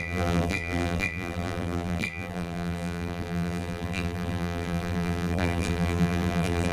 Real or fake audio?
fake